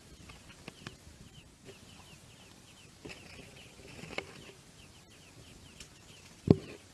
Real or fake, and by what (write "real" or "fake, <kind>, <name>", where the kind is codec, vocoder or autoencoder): real